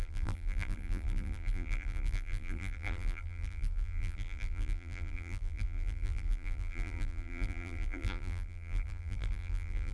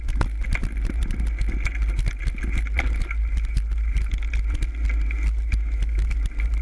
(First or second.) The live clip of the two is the second